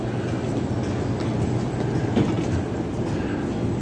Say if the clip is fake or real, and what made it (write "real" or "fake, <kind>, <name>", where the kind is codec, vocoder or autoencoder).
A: real